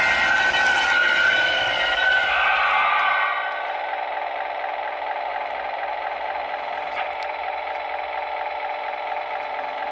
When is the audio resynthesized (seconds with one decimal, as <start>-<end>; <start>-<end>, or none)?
1.0-2.3; 5.3-7.7